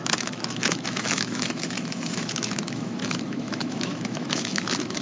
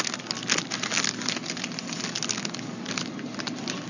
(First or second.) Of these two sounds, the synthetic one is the first